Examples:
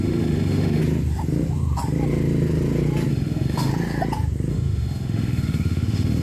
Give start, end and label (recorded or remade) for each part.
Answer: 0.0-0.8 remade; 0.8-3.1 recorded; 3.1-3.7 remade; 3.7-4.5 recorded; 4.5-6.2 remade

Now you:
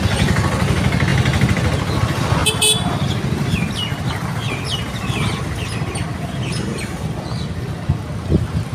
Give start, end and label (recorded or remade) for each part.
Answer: 0.0-8.7 recorded

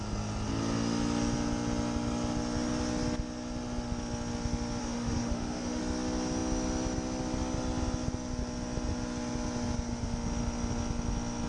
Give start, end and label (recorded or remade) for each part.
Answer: 0.0-4.8 recorded; 4.8-5.8 remade; 5.8-11.5 recorded

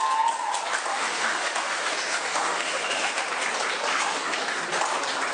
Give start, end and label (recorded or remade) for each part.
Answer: 0.0-0.9 recorded; 0.9-3.3 remade; 3.3-3.9 recorded; 3.9-4.6 remade; 4.6-5.3 recorded